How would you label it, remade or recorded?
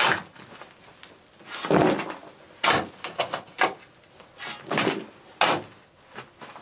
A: recorded